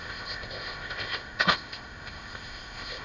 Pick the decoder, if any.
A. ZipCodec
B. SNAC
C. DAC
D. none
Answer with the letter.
A